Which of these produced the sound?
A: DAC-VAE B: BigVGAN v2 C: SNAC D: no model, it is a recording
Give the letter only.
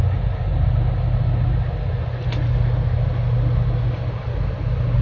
D